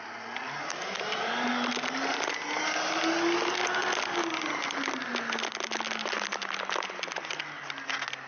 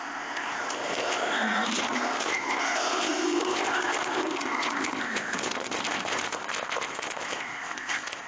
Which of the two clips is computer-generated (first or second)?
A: second